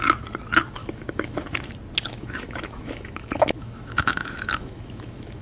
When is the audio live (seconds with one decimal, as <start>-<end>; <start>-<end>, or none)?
0.0-0.8; 1.7-2.1